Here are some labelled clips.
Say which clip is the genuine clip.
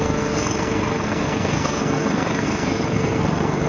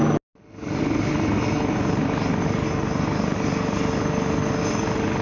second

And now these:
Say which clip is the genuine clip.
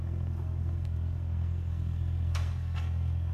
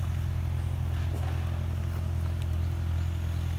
second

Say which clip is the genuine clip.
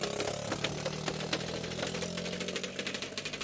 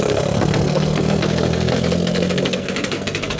first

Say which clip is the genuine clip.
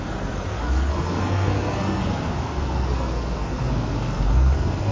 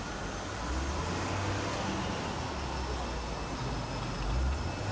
second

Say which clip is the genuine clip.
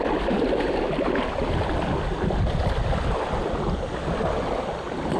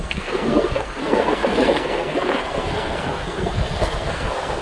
first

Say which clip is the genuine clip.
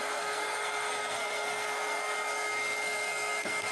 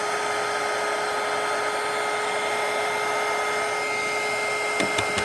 second